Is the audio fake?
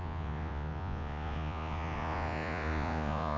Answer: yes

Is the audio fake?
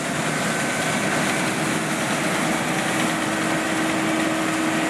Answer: no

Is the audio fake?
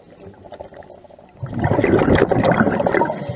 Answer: no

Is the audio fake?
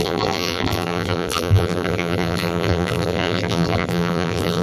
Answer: yes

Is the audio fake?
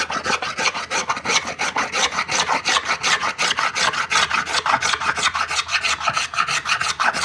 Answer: no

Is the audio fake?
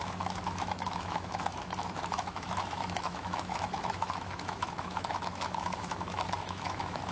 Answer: yes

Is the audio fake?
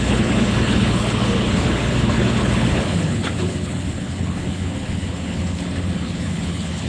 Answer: yes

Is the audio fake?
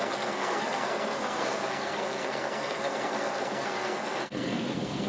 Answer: yes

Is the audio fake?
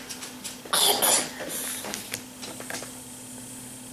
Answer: no